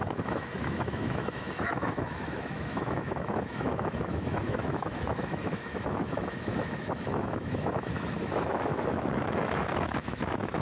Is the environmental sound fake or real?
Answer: fake